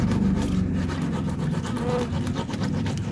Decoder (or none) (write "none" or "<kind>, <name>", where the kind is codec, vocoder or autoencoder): none